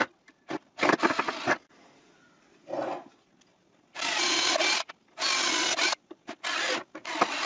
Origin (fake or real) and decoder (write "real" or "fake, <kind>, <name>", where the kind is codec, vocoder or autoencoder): real